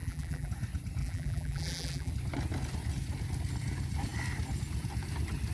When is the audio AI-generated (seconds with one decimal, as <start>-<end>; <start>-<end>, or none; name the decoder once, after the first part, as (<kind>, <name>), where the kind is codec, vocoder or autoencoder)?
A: 0.0-0.5 (vocoder, BigVGAN v2); 1.0-2.1